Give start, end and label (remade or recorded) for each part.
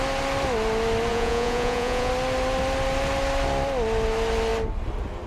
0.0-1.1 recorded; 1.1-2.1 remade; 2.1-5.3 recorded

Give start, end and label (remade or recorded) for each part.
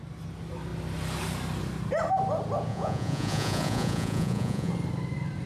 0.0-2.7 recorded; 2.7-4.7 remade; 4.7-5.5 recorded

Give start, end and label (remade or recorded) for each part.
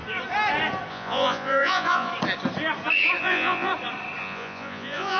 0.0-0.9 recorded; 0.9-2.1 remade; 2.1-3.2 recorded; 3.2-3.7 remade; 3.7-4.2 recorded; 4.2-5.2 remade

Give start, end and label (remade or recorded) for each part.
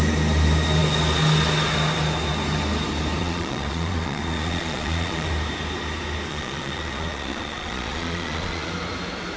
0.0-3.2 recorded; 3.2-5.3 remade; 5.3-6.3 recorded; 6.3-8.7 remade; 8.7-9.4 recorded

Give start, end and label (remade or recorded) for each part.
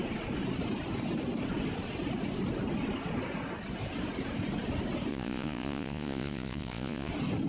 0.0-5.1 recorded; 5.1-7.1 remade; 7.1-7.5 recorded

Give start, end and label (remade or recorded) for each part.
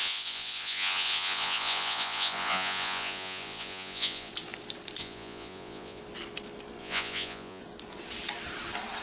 0.0-4.3 remade; 4.3-5.0 recorded; 5.0-6.0 remade; 6.0-6.8 recorded; 6.8-7.6 remade; 7.6-9.0 recorded